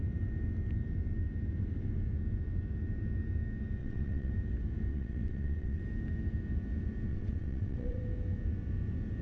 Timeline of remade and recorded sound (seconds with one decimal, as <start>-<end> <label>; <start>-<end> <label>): 0.0-3.8 recorded; 3.8-4.3 remade; 4.3-4.9 recorded; 4.9-5.8 remade; 5.8-7.1 recorded; 7.1-8.0 remade; 8.0-9.2 recorded

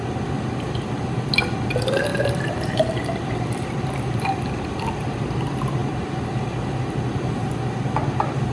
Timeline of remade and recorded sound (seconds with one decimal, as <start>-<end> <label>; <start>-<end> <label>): 0.0-2.1 recorded; 2.1-3.7 remade; 3.7-5.8 recorded; 5.8-7.3 remade; 7.3-8.5 recorded

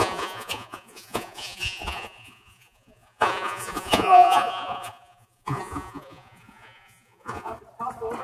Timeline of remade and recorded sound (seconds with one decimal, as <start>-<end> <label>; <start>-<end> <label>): 0.0-7.5 remade; 7.5-8.2 recorded

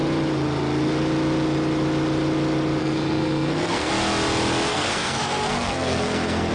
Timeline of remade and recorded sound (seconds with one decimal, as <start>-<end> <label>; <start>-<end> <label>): 0.0-2.8 recorded; 2.8-3.9 remade; 3.9-4.7 recorded; 4.7-6.5 remade

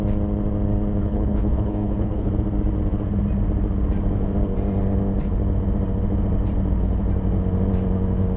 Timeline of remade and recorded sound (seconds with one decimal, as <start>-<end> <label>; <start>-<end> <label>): 0.0-1.0 recorded; 1.0-2.3 remade; 2.3-8.4 recorded